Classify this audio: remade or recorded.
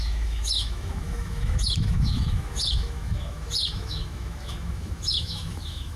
remade